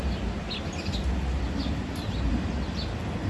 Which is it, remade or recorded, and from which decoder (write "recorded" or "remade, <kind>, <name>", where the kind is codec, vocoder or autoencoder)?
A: recorded